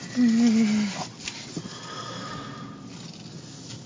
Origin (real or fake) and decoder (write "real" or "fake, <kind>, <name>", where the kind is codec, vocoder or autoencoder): real